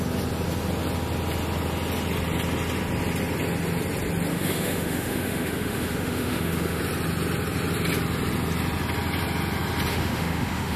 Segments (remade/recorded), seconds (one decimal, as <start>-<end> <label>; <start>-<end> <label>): 0.0-4.3 recorded; 4.3-6.8 remade; 6.8-9.9 recorded; 9.9-10.8 remade

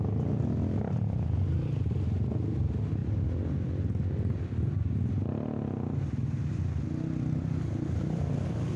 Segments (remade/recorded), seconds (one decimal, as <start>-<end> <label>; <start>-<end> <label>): 0.0-8.8 recorded

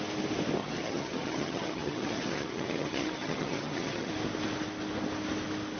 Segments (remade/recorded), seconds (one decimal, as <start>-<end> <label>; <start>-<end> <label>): 0.0-0.6 recorded; 0.6-4.1 remade; 4.1-5.8 recorded